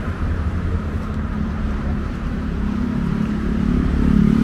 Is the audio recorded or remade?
remade